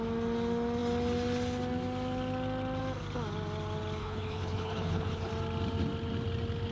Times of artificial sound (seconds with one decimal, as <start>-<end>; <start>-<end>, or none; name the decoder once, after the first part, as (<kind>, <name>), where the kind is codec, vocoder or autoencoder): 4.0-5.3 (codec, HILCodec)